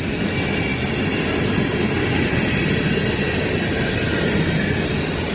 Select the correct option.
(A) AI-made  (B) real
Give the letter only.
B